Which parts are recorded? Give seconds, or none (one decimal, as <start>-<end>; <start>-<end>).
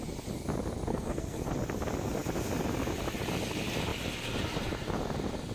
0.0-0.9; 1.5-5.5